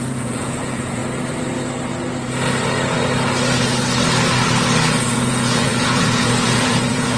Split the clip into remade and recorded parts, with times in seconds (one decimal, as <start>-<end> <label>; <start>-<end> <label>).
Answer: 0.0-1.0 remade; 1.0-5.0 recorded; 5.0-7.2 remade